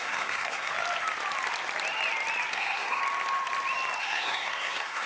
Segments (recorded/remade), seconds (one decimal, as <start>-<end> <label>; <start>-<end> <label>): 0.0-0.7 remade; 0.7-2.5 recorded; 2.5-3.0 remade; 3.0-4.0 recorded; 4.0-5.1 remade